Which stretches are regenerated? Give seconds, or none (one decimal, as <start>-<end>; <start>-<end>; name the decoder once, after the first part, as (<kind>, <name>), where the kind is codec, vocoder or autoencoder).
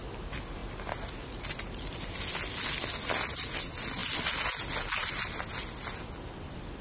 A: none